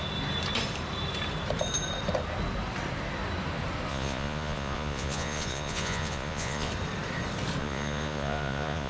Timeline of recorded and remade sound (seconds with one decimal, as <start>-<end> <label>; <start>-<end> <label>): 0.0-3.9 recorded; 3.9-6.7 remade; 6.7-7.6 recorded; 7.6-8.9 remade